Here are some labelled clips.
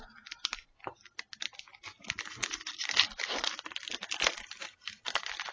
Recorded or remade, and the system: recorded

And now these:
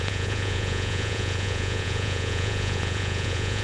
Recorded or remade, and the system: remade, vocoder, Vocos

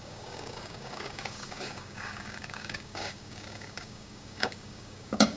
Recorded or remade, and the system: remade, codec, DAC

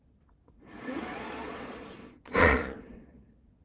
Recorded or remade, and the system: remade, vocoder, Vocos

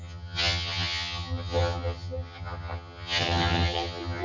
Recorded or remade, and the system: remade, vocoder, HiFi-GAN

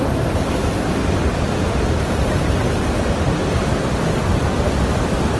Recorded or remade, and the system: recorded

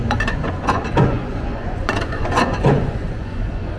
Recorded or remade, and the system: remade, vocoder, Vocos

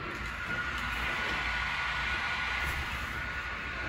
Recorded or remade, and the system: recorded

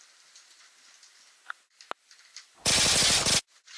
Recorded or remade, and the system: recorded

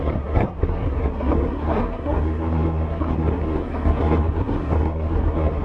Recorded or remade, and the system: remade, codec, SNAC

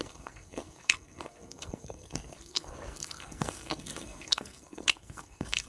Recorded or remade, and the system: remade, codec, SNAC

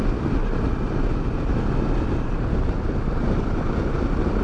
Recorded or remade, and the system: recorded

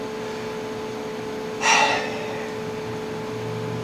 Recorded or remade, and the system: recorded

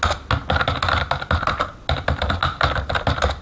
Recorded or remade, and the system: recorded